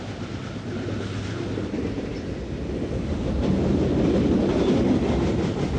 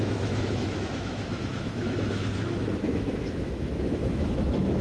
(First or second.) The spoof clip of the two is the second